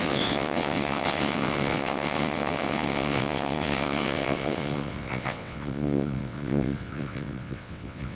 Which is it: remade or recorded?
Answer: remade